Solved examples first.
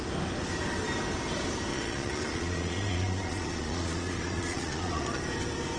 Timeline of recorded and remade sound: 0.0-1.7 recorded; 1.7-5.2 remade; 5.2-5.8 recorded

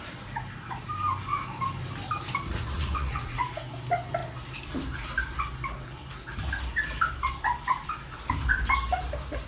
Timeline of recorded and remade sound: 0.0-2.5 recorded; 2.5-3.6 remade; 3.6-9.5 recorded